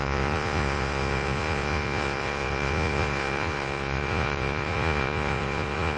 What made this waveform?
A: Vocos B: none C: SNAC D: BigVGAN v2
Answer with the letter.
A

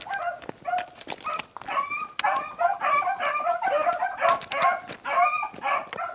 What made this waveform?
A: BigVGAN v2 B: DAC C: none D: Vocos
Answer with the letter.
C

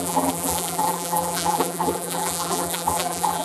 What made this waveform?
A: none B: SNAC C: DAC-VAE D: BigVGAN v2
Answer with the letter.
D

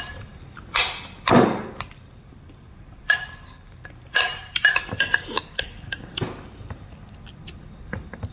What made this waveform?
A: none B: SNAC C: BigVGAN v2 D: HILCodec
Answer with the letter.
C